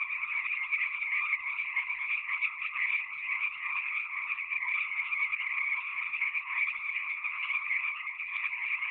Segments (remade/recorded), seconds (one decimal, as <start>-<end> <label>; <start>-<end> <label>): 0.0-8.9 remade